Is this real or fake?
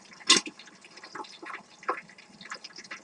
real